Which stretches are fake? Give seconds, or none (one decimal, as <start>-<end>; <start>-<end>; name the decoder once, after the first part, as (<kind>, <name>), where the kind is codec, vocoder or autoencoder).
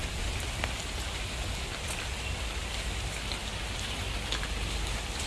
none